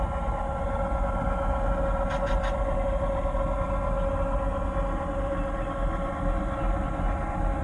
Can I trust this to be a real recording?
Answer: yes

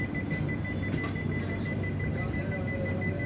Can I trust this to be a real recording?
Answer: yes